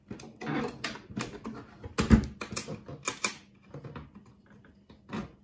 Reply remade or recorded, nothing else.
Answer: recorded